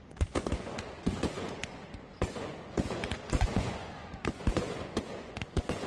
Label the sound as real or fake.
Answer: fake